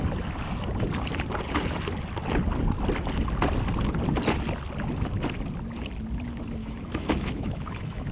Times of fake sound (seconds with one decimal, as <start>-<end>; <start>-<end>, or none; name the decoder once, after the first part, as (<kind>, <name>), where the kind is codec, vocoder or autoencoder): 6.6-8.1 (autoencoder, DAC-VAE)